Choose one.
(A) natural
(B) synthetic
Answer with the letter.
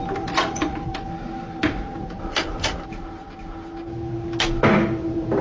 A